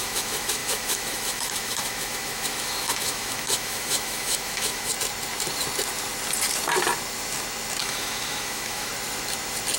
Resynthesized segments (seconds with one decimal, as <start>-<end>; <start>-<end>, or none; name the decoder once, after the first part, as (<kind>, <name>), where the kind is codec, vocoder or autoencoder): 0.0-4.9 (autoencoder, DAC-VAE); 7.8-8.9